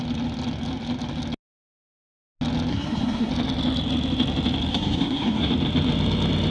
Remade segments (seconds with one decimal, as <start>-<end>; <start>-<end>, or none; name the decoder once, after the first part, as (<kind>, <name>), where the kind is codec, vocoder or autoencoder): 2.7-3.3 (codec, SNAC); 4.7-5.5